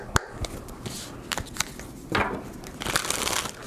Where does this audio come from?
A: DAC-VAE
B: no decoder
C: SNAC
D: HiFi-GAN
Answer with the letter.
B